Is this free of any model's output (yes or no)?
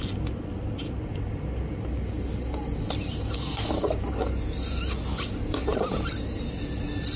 yes